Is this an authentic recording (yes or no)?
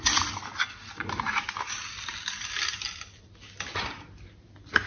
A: yes